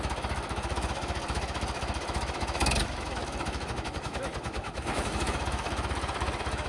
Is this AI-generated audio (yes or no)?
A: yes